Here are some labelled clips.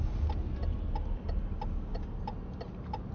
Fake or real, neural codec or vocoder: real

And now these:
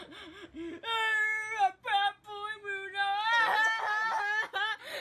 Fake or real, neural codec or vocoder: real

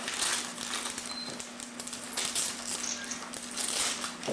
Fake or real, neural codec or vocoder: real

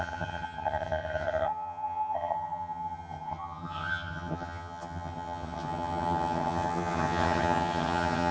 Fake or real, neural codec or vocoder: fake, vocoder, HiFi-GAN